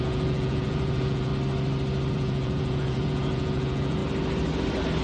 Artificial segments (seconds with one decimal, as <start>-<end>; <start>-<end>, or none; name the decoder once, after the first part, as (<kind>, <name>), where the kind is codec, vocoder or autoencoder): 0.0-1.3 (vocoder, Vocos); 2.1-4.0